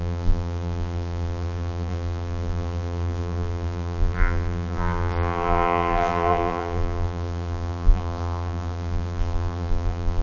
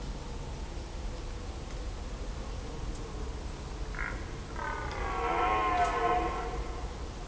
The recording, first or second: second